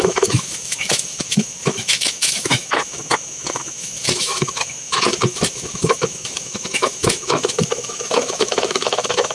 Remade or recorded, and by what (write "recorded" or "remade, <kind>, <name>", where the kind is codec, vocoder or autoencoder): remade, autoencoder, DAC-VAE